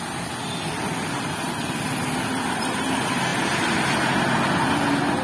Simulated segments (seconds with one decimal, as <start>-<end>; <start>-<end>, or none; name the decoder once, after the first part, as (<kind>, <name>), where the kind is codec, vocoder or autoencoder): none